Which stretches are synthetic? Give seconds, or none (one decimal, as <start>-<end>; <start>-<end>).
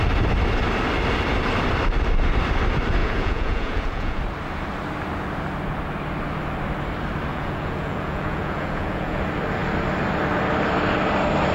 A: 3.0-4.2; 7.3-9.2